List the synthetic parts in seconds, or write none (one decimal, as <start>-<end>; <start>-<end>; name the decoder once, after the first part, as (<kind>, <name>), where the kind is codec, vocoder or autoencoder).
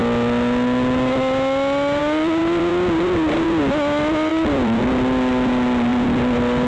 2.4-3.6 (vocoder, BigVGAN v2); 4.3-4.8; 5.9-6.7